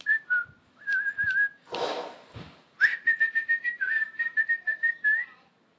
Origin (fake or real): real